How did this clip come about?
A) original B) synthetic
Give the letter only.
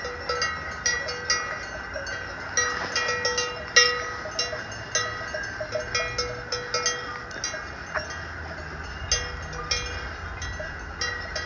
A